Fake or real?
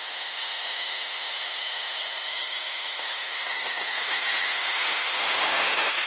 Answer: fake